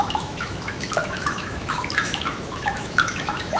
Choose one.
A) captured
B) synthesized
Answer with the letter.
B